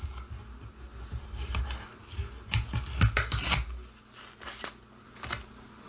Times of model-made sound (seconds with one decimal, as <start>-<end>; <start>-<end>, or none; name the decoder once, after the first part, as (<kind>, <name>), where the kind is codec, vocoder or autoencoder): none

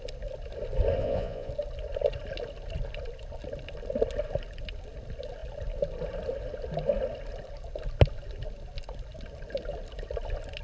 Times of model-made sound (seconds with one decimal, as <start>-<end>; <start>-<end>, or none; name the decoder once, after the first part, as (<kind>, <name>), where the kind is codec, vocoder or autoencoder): 1.0-1.5 (vocoder, Vocos)

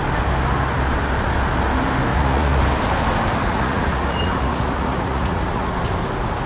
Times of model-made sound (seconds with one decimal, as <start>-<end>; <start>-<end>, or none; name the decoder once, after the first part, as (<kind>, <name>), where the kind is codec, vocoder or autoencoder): 2.1-2.6 (vocoder, Vocos); 3.4-5.9

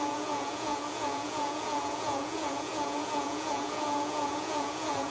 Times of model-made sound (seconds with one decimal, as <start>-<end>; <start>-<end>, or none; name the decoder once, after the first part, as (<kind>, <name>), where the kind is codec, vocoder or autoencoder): 0.0-5.1 (vocoder, Vocos)